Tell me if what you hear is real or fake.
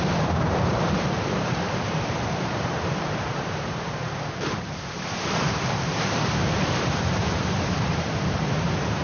fake